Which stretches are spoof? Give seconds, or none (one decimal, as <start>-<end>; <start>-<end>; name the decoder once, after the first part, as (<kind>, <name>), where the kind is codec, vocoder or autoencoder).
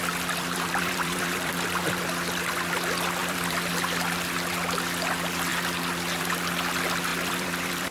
0.0-2.0 (vocoder, BigVGAN v2); 3.2-3.7; 7.1-7.9